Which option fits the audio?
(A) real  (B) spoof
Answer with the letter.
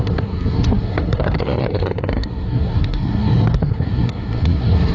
B